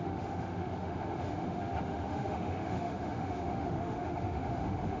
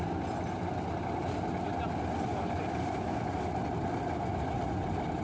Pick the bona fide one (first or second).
second